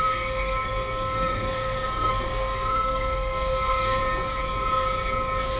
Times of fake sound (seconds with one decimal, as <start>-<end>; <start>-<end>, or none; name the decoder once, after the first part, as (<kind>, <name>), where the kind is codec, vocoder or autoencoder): 0.0-4.0 (codec, SNAC)